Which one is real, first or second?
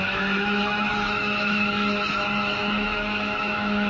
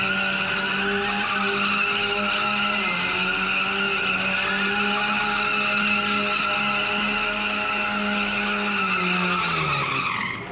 second